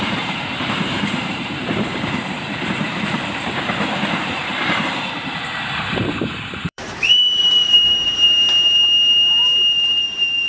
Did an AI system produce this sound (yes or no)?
yes